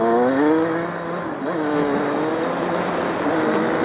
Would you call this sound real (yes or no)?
yes